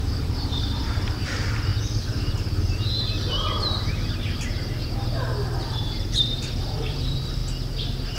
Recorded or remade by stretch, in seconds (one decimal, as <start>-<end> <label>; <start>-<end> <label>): 0.0-1.7 remade; 1.7-5.6 recorded; 5.6-7.4 remade; 7.4-8.2 recorded